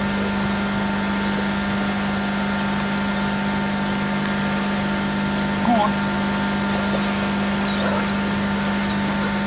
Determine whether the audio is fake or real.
real